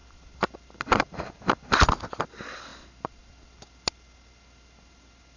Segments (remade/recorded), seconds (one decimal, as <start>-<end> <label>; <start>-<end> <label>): 0.0-0.7 remade; 0.7-2.7 recorded; 2.7-3.6 remade; 3.6-5.4 recorded